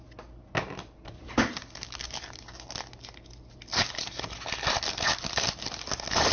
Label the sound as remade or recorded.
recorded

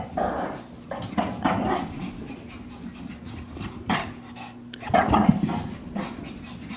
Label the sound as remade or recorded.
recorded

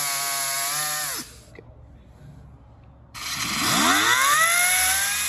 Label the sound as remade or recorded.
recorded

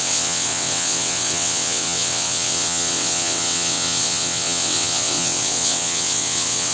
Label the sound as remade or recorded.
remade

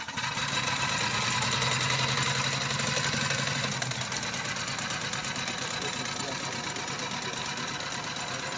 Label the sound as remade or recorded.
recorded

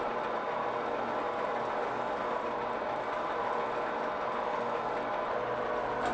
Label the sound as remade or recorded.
recorded